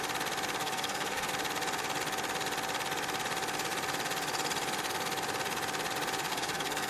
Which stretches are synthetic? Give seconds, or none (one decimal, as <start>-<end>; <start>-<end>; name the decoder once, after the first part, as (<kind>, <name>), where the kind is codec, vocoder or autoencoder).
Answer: 0.6-1.3 (codec, SNAC); 6.3-6.9